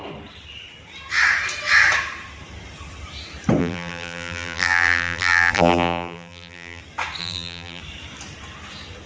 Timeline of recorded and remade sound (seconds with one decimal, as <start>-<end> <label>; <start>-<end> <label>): 0.0-3.6 recorded; 3.6-6.8 remade; 6.8-7.2 recorded; 7.2-7.8 remade; 7.8-9.1 recorded